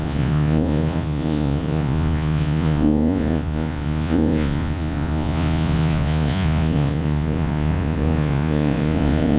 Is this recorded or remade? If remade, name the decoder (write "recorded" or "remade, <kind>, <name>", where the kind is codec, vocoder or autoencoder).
remade, vocoder, Vocos